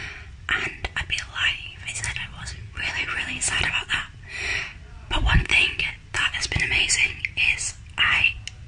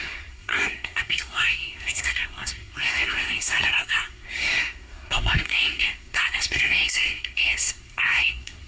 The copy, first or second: second